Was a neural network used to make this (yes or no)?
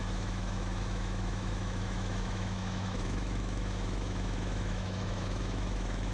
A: yes